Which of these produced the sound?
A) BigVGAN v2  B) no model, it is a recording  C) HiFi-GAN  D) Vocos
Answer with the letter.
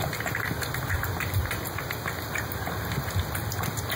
B